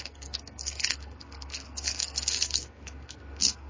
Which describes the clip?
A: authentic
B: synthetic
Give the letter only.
B